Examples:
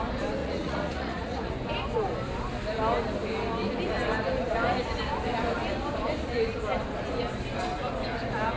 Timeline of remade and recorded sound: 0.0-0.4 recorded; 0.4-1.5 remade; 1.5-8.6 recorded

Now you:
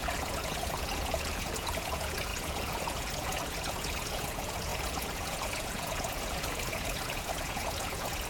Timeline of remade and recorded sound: 0.0-8.3 remade

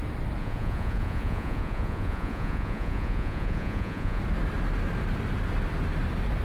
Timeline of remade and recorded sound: 0.0-0.4 recorded; 0.4-4.2 remade; 4.2-6.4 recorded

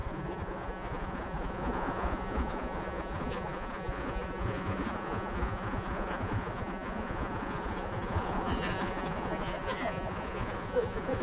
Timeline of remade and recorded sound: 0.0-11.2 remade